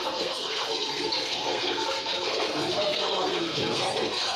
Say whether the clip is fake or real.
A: fake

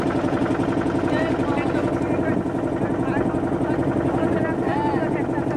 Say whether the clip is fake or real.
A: real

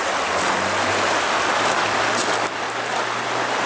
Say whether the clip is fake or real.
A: real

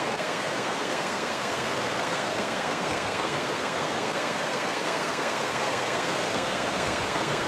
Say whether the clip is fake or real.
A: fake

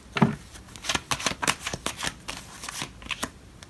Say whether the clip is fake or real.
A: real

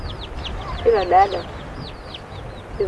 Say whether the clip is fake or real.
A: real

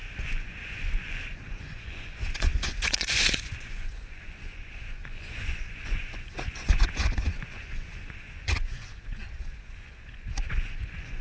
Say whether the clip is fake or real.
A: fake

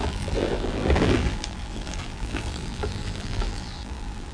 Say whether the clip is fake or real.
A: fake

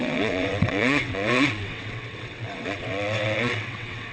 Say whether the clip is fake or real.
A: fake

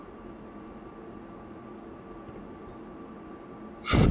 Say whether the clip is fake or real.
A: real